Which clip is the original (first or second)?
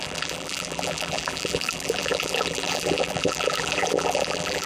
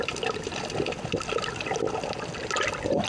second